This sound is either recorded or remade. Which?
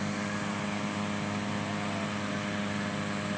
recorded